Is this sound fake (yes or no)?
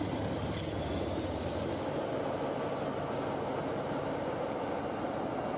no